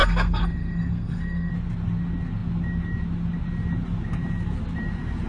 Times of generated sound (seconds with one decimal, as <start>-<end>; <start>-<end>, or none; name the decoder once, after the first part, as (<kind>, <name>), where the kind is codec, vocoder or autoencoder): 0.0-1.5 (codec, SNAC)